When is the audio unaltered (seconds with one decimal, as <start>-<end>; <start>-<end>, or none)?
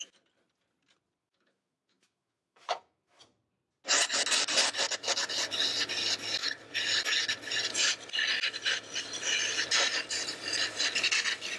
0.0-1.2; 3.2-11.6